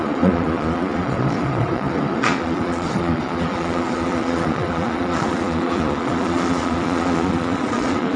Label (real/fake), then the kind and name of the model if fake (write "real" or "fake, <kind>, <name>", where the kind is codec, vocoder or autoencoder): fake, vocoder, Vocos